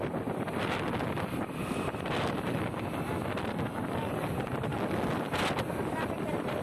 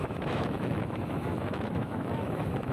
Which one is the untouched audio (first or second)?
first